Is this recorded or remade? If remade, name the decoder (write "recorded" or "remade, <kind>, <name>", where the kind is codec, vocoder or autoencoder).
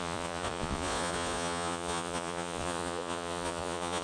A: remade, vocoder, Vocos